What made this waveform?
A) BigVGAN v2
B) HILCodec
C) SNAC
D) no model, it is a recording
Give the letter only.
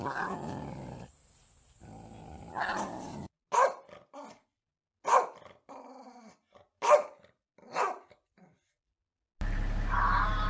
D